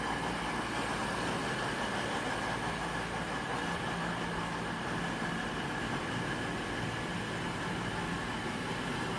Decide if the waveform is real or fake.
real